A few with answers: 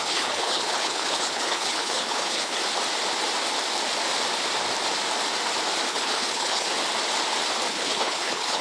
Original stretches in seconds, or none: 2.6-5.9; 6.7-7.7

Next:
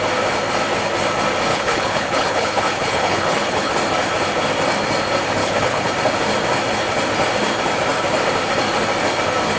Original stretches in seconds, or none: 0.0-1.5; 3.7-5.4; 5.9-9.6

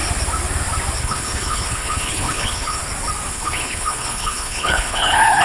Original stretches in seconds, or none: 0.0-1.0; 2.8-3.3

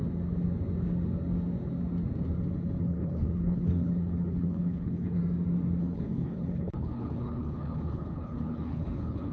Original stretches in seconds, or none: 0.0-2.8; 5.2-5.8

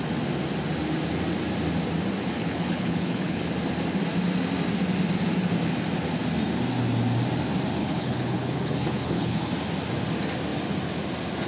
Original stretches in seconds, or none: 0.0-2.4; 3.4-7.8; 9.5-11.5

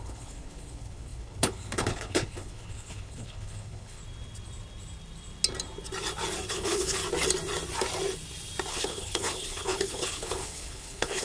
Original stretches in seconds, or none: 4.0-6.5; 7.0-8.7

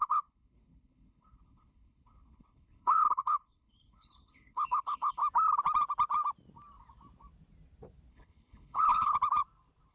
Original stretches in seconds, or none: 5.2-8.1; 9.1-9.9

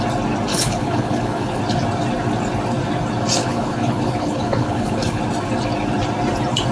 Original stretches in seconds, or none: 0.0-0.5; 1.6-3.4; 5.2-6.7